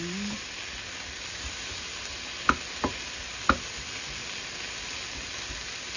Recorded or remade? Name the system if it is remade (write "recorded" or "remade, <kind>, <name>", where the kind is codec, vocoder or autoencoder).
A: recorded